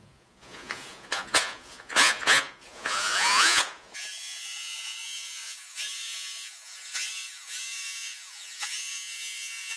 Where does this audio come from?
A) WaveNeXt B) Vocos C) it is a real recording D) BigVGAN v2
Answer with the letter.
B